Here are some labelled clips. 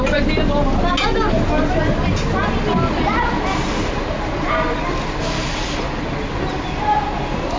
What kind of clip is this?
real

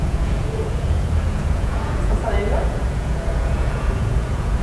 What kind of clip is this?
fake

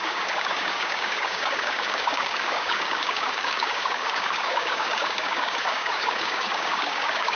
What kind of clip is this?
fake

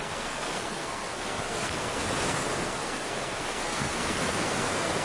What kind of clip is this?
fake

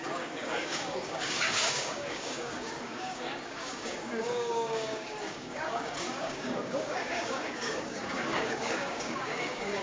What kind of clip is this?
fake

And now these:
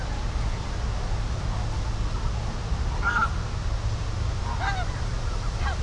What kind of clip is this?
real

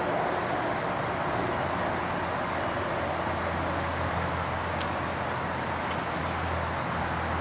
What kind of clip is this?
real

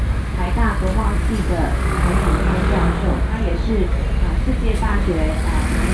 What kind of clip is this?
real